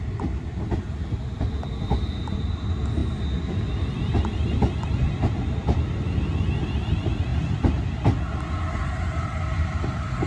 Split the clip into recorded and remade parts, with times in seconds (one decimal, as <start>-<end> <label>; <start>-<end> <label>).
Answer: 0.0-10.3 recorded